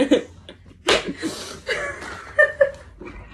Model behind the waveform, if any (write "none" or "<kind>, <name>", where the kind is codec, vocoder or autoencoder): none